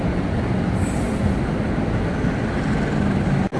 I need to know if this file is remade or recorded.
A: recorded